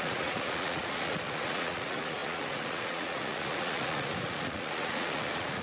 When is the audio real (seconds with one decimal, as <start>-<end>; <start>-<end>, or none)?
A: none